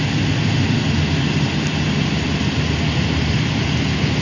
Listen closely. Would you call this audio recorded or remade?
recorded